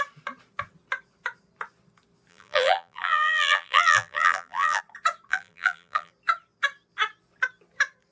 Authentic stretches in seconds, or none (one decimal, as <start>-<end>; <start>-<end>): 0.0-2.3; 4.8-5.3; 6.1-8.1